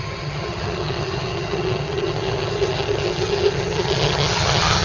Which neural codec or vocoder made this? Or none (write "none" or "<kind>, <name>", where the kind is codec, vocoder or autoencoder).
vocoder, HiFi-GAN